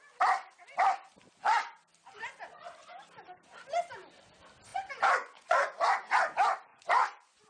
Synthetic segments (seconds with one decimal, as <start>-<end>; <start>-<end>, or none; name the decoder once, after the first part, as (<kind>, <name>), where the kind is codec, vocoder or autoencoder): 4.7-6.2 (vocoder, Vocos); 6.7-7.5